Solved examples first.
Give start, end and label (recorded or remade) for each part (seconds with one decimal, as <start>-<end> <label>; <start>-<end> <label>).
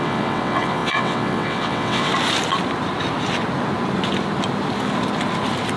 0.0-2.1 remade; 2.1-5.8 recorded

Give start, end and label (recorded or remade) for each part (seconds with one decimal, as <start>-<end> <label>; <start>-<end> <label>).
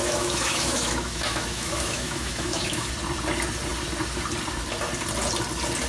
0.0-2.9 remade; 2.9-5.9 recorded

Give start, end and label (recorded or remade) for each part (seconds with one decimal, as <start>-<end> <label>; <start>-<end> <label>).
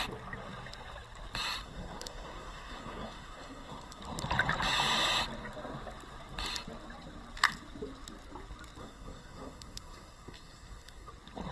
0.0-1.6 recorded; 1.6-4.0 remade; 4.0-8.8 recorded; 8.8-11.1 remade; 11.1-11.5 recorded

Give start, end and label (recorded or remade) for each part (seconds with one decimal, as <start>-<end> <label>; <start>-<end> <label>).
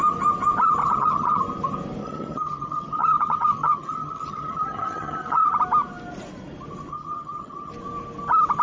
0.0-0.8 recorded; 0.8-1.4 remade; 1.4-2.0 recorded; 2.0-5.6 remade; 5.6-6.9 recorded; 6.9-7.7 remade; 7.7-8.6 recorded